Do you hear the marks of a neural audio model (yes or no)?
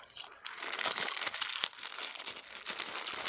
no